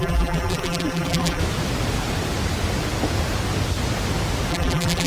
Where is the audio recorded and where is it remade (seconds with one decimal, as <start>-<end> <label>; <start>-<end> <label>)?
0.0-1.4 remade; 1.4-4.5 recorded; 4.5-5.1 remade